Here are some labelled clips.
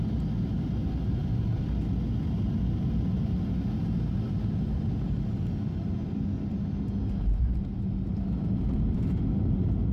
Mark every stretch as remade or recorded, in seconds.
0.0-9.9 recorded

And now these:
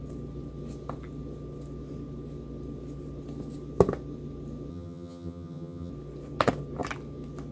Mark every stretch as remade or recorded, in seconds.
0.0-4.7 recorded; 4.7-5.9 remade; 5.9-7.5 recorded

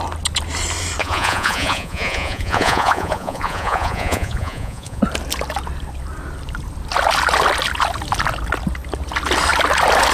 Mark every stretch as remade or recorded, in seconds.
0.0-1.0 recorded; 1.0-5.0 remade; 5.0-10.1 recorded

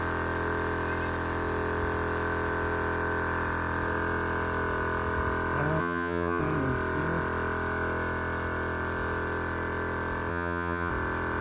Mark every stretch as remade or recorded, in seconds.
0.0-5.8 recorded; 5.8-6.4 remade; 6.4-10.3 recorded; 10.3-10.9 remade; 10.9-11.4 recorded